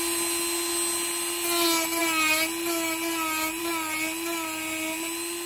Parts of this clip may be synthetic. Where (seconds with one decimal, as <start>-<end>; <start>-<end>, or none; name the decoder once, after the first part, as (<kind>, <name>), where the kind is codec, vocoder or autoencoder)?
none